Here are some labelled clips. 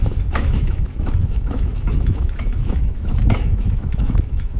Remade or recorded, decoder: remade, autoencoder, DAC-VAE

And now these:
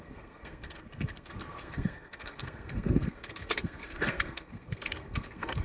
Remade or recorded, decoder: remade, codec, SNAC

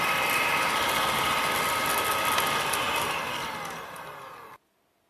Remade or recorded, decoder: recorded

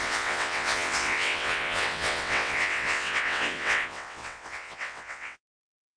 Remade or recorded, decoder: remade, vocoder, WaveNeXt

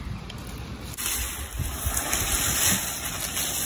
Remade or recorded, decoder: recorded